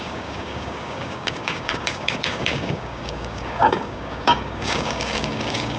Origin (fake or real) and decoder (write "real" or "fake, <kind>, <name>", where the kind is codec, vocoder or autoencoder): fake, codec, DAC